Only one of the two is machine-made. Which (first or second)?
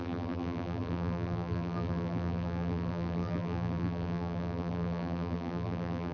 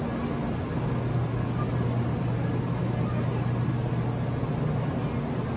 first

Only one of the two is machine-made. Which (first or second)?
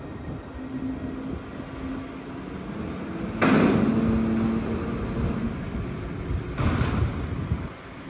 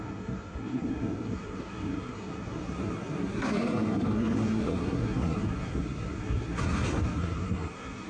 second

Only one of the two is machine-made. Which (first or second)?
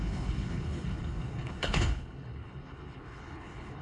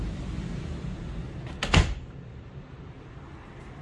first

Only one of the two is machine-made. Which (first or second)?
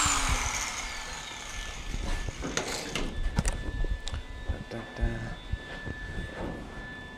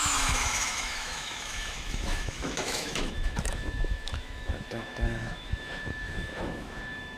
second